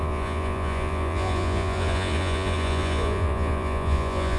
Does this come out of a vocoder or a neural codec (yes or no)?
yes